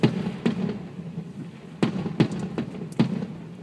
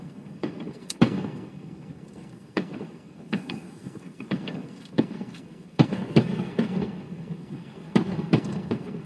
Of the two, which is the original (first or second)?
first